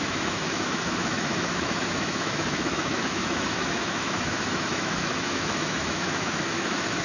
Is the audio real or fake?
fake